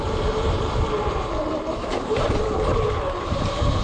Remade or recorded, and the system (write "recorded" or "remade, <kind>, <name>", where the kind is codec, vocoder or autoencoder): remade, vocoder, BigVGAN v2